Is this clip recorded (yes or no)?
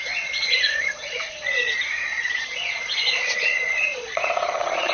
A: no